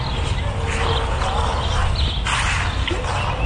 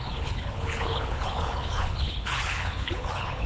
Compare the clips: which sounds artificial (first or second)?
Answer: second